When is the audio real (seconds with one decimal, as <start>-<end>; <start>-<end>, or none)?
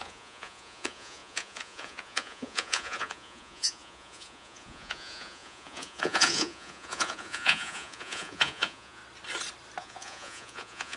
9.0-9.8